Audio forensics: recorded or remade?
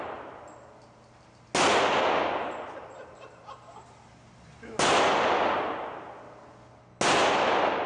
recorded